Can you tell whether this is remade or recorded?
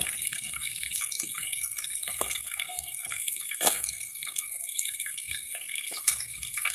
remade